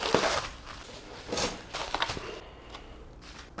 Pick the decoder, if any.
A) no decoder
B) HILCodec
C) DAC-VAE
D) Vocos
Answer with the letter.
A